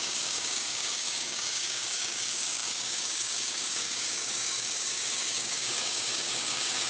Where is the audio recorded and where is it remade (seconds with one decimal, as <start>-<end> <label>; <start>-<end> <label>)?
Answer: 0.0-6.9 remade